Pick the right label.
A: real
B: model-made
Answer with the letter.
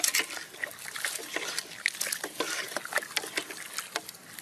A